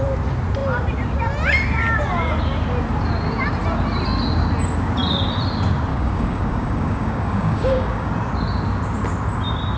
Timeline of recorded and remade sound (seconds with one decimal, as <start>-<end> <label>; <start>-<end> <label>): 0.0-5.9 recorded; 5.9-8.1 remade; 8.1-9.8 recorded